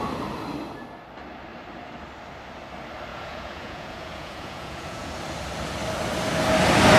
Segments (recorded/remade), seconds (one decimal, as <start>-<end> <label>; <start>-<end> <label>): 0.0-3.1 recorded; 3.1-5.1 remade; 5.1-7.0 recorded